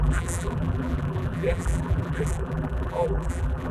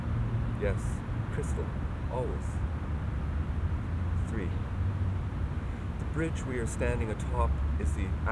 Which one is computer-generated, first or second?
first